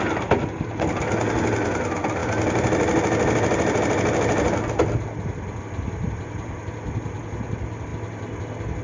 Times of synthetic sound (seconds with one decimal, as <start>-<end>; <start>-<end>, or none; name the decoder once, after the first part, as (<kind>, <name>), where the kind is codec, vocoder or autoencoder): none

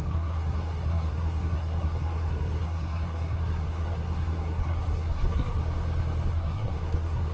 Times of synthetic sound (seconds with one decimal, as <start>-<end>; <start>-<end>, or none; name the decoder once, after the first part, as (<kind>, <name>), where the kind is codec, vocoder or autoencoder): 0.0-5.6 (codec, SNAC); 6.3-7.3

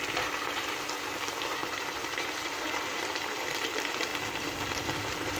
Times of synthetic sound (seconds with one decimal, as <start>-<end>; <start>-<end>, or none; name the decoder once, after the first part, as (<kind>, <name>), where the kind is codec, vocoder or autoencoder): 0.0-4.1 (vocoder, BigVGAN v2); 4.7-5.4

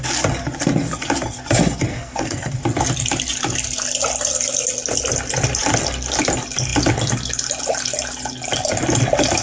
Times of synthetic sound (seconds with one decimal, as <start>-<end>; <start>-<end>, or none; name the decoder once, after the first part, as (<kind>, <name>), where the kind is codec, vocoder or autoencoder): 1.9-2.5 (codec, SNAC)